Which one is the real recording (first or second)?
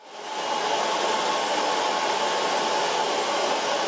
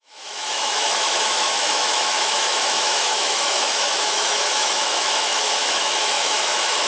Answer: first